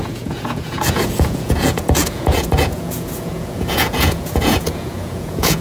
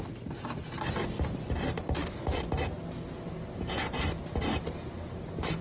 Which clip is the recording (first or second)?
second